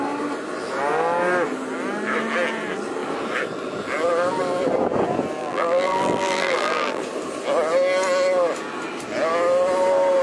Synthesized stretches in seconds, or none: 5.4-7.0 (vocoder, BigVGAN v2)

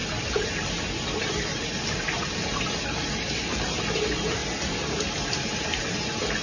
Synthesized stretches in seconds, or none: 0.0-3.8 (vocoder, BigVGAN v2); 4.4-5.8

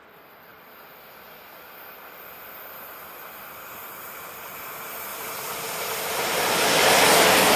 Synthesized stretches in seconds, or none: 5.1-7.6 (vocoder, BigVGAN v2)

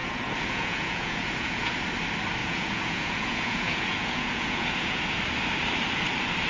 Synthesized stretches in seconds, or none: 0.0-1.8 (vocoder, Vocos); 2.4-5.2